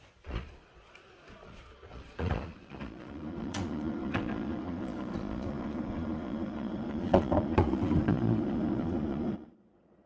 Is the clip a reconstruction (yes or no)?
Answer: yes